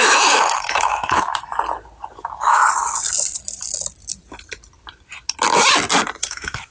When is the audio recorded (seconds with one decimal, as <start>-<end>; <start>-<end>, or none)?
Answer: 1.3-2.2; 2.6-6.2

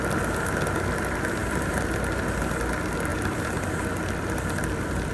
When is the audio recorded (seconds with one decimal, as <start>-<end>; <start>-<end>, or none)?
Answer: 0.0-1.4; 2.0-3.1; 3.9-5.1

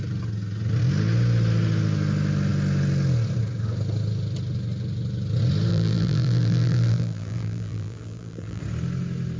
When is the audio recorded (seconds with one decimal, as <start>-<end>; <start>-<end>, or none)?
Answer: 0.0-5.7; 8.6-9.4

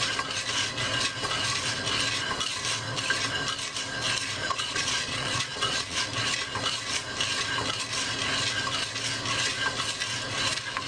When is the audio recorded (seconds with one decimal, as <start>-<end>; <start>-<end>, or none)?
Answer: 0.0-4.4; 6.0-10.9

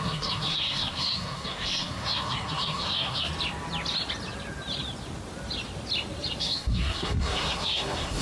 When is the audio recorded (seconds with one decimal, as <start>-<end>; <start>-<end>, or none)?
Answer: 3.3-6.4

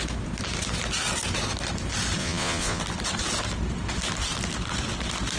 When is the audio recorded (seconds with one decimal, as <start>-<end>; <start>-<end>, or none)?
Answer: 0.0-2.2; 2.8-5.4

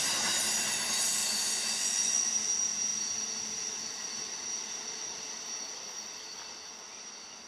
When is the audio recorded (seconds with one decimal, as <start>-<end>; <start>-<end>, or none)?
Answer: 0.0-1.2; 2.2-7.5